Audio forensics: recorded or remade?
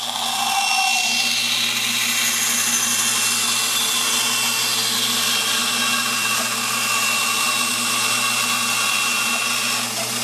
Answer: recorded